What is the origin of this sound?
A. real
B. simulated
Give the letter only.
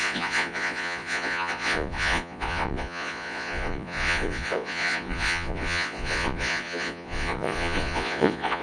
B